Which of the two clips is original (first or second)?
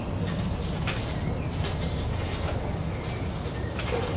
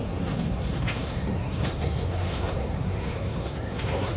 first